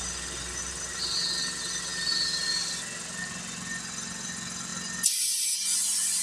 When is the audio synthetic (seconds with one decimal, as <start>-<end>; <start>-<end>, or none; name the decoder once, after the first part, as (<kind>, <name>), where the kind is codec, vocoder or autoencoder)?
none